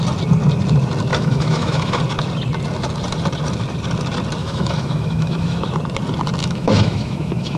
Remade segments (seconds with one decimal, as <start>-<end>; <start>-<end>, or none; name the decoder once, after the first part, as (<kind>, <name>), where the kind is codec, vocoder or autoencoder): 1.1-2.0 (autoencoder, DAC-VAE); 4.4-5.6; 6.4-7.6

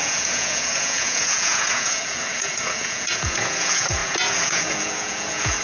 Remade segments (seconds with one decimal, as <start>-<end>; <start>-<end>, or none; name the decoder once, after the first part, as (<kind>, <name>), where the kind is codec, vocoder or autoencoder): 0.0-5.6 (vocoder, Vocos)

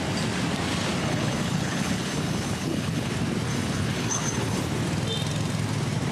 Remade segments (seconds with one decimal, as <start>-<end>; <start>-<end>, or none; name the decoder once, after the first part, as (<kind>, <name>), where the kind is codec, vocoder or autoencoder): 1.0-3.1 (codec, HILCodec); 3.5-4.6

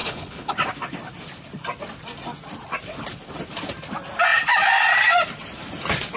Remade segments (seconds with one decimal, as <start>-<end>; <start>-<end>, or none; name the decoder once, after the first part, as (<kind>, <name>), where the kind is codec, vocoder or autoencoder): 0.0-0.5 (codec, HILCodec)

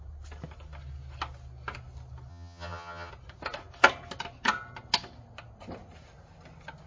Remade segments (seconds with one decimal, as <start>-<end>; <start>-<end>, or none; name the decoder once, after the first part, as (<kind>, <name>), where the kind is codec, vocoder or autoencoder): 2.3-3.1 (vocoder, HiFi-GAN)

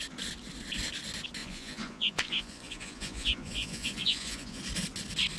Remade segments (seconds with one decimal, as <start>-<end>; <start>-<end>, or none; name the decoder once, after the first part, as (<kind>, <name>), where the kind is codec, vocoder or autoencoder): 1.4-4.6 (vocoder, Vocos)